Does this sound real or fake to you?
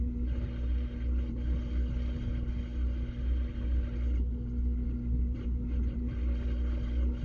real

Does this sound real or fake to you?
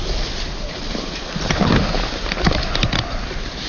real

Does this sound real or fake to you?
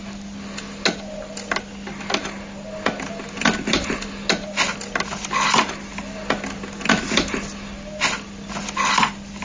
real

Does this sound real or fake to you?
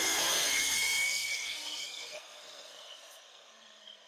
fake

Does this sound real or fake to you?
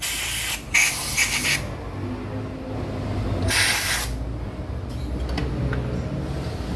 real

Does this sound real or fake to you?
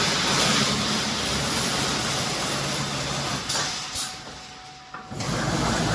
real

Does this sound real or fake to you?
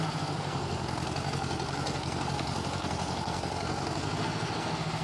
fake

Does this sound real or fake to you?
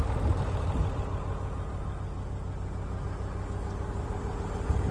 real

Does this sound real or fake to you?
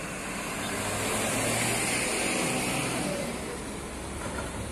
real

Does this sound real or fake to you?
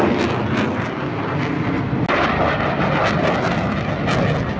real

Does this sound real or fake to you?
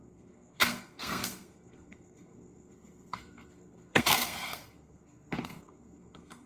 fake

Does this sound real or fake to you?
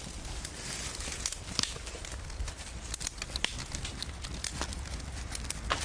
real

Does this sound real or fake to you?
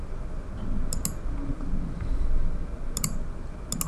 real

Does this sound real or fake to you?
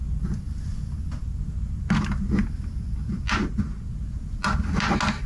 real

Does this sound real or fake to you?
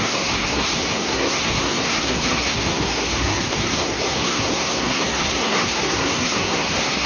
fake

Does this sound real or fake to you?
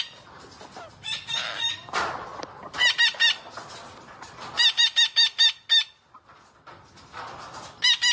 real